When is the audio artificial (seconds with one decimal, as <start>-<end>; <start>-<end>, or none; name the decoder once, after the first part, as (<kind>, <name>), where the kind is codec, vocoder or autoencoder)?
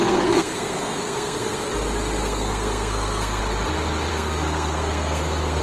0.0-1.6 (codec, SNAC); 2.2-3.4; 4.1-5.6